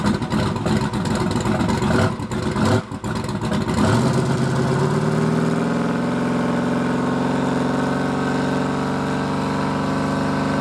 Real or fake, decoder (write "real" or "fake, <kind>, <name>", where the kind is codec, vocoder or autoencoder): real